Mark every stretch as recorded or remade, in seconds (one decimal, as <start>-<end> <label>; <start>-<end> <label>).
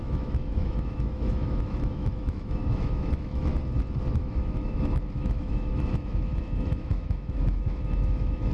0.0-3.5 remade; 3.5-4.1 recorded; 4.1-8.5 remade